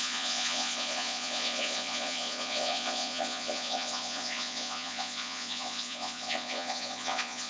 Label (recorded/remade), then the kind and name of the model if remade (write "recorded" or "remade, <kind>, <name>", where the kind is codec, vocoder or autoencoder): remade, vocoder, Vocos